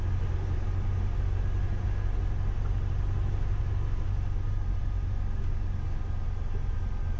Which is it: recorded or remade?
recorded